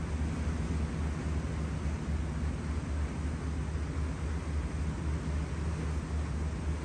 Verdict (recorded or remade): recorded